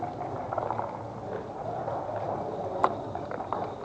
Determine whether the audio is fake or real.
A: real